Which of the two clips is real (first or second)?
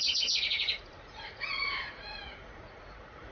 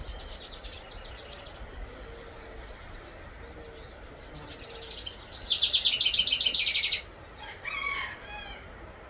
second